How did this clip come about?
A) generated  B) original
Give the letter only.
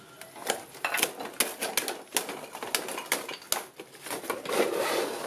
B